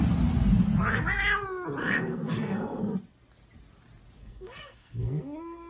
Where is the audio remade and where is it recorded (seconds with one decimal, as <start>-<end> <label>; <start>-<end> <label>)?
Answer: 0.0-1.8 recorded; 1.8-2.8 remade; 2.8-4.2 recorded; 4.2-5.7 remade